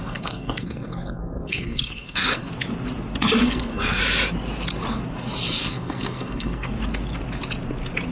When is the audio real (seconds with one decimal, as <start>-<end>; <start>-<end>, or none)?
2.5-3.4; 4.0-5.6; 6.7-8.1